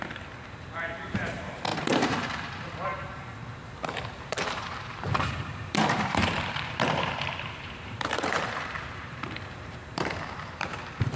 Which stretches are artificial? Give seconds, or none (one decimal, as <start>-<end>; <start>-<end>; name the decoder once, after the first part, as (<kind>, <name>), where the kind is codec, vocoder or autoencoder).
0.0-11.2 (vocoder, BigVGAN v2)